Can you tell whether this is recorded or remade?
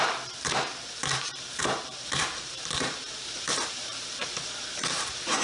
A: remade